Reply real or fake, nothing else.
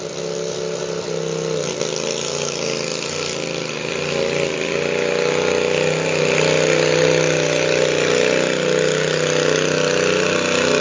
real